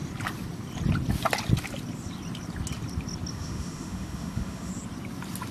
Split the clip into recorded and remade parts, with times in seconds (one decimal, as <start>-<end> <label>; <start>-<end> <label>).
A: 0.0-3.3 recorded; 3.3-4.7 remade; 4.7-5.5 recorded

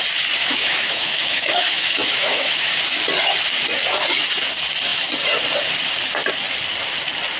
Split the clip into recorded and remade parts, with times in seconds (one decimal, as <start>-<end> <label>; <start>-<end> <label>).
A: 0.0-0.4 recorded; 0.4-2.8 remade; 2.8-7.4 recorded

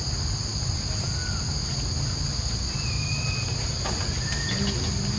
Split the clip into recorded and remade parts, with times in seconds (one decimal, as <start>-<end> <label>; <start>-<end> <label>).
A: 0.0-5.2 recorded

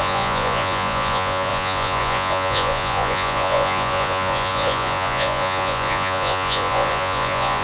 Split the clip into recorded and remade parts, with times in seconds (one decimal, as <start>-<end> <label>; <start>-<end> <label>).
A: 0.0-7.6 remade